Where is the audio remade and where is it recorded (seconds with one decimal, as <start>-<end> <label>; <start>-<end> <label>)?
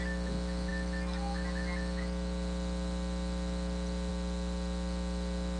0.0-5.6 recorded